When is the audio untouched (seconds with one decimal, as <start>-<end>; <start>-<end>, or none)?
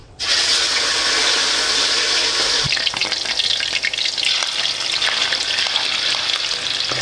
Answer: 0.8-7.0